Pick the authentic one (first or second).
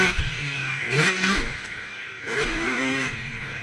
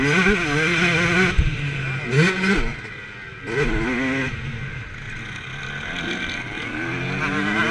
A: second